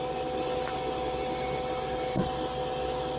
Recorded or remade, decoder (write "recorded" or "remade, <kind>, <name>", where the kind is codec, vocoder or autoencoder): recorded